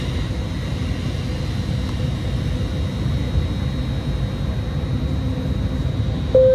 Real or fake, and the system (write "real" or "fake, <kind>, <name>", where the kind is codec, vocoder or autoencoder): real